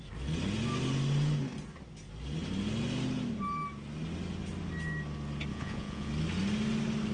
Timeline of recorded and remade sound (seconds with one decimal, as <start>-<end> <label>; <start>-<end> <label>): 0.0-5.5 recorded; 5.5-6.1 remade; 6.1-7.1 recorded